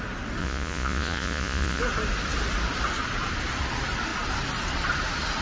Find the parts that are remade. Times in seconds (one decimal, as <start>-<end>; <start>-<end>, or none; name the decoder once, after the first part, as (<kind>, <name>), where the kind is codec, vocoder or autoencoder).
0.4-1.8 (vocoder, Vocos)